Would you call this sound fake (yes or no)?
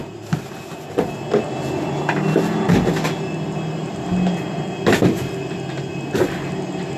no